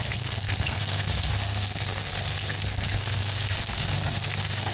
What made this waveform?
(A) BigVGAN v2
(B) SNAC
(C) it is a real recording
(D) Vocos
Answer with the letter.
B